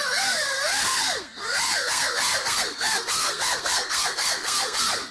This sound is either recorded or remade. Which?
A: remade